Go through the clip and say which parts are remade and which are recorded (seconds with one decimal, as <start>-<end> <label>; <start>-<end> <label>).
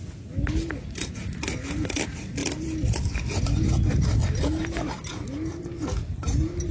0.0-6.7 recorded